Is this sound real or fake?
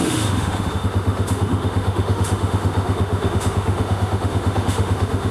fake